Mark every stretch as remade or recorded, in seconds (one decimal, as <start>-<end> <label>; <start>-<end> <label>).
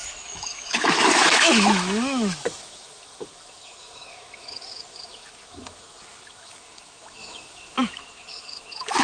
0.0-9.0 remade